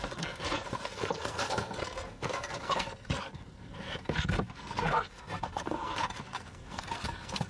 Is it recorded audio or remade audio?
remade